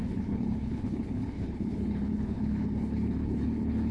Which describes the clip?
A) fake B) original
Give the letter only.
A